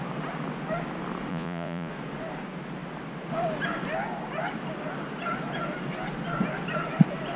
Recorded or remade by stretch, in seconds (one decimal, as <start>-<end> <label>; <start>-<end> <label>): 0.0-1.3 recorded; 1.3-1.9 remade; 1.9-7.4 recorded